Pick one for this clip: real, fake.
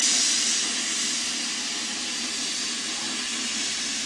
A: real